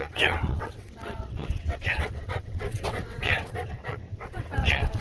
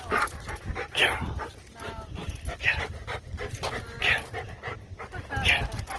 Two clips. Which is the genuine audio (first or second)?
second